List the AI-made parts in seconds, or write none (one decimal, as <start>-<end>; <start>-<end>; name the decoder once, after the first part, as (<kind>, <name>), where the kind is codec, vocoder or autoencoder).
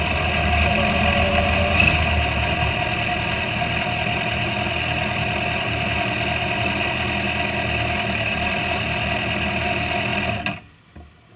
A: none